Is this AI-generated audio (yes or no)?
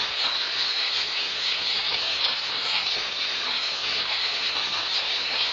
yes